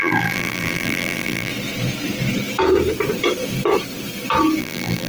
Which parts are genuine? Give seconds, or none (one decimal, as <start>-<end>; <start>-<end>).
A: 1.5-4.6